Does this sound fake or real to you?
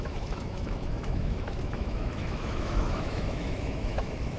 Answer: fake